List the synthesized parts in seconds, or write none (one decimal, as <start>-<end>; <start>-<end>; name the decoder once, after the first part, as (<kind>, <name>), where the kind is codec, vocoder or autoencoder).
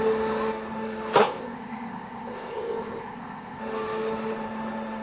1.2-3.6 (codec, ZipCodec)